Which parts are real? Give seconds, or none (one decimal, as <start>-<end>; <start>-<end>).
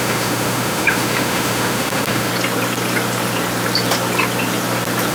2.3-5.1